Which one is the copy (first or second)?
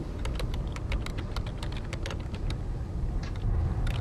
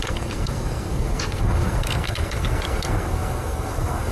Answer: second